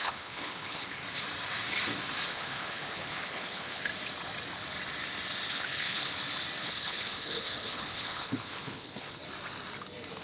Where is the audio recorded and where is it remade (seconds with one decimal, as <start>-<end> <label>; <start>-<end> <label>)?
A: 0.0-1.0 remade; 1.0-2.3 recorded; 2.3-3.9 remade; 3.9-5.5 recorded; 5.5-6.1 remade; 6.1-6.6 recorded; 6.6-9.2 remade; 9.2-10.2 recorded